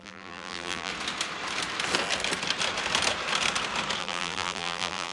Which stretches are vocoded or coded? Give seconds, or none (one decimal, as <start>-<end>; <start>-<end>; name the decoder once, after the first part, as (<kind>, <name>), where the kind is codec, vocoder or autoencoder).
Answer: 0.0-0.9 (vocoder, BigVGAN v2); 4.0-5.1